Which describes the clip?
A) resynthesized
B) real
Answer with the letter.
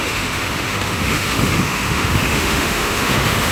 A